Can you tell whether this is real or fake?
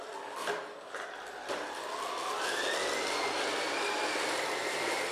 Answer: real